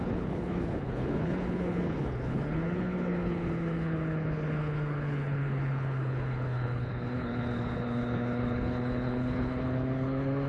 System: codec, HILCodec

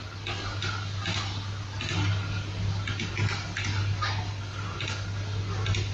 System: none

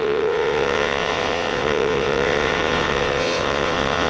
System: vocoder, WaveNeXt